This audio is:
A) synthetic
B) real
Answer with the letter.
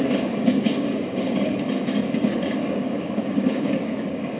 A